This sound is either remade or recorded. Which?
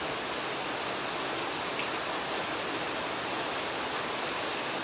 recorded